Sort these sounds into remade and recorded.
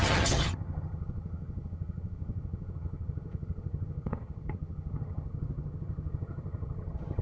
remade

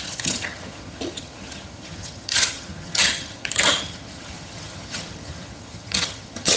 remade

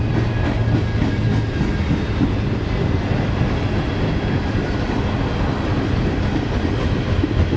recorded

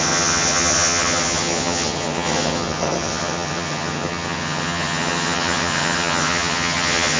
remade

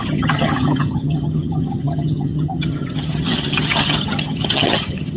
remade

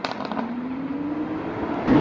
recorded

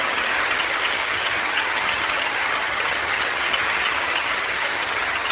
remade